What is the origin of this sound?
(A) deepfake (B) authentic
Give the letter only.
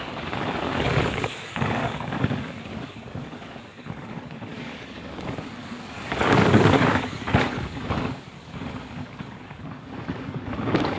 A